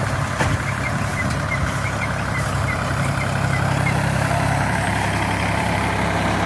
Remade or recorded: remade